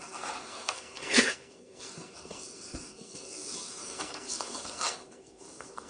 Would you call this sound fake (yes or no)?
yes